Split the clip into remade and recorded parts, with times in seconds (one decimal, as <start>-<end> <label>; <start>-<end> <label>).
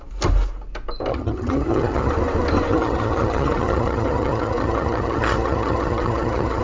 0.0-1.1 recorded; 1.1-2.1 remade; 2.1-2.7 recorded; 2.7-6.6 remade